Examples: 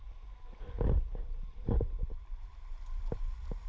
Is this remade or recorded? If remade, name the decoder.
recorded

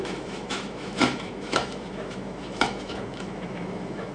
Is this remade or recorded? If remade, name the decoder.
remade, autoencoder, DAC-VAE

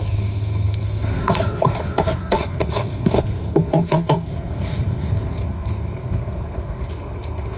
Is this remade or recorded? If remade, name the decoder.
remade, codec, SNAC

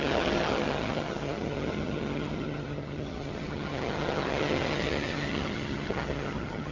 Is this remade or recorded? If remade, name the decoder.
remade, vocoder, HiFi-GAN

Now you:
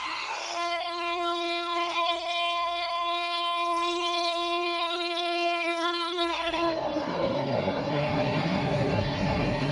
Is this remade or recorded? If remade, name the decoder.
remade, codec, SNAC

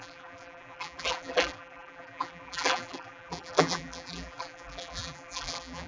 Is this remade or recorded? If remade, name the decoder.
remade, vocoder, BigVGAN v2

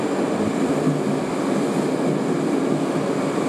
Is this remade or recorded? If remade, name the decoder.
recorded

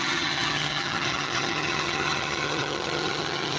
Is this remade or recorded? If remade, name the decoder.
remade, vocoder, HiFi-GAN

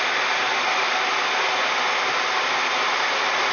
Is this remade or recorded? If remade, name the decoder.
recorded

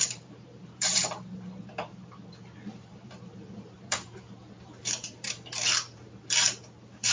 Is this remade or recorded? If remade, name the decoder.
remade, vocoder, BigVGAN v2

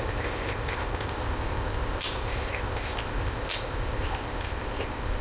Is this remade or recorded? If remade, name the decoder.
remade, codec, ZipCodec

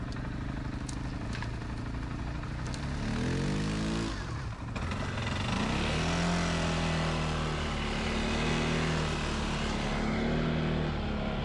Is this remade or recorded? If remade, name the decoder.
recorded